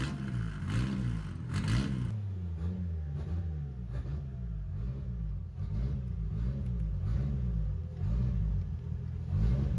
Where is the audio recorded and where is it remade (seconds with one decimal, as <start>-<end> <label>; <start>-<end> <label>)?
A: 0.0-9.8 recorded